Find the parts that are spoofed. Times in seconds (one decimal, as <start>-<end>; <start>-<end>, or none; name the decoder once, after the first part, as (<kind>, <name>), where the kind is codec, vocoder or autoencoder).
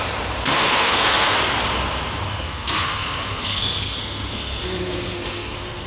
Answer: 0.4-1.4 (codec, SNAC); 2.3-5.9